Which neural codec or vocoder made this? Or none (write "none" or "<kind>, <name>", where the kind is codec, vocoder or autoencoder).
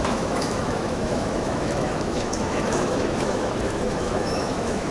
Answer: autoencoder, DAC-VAE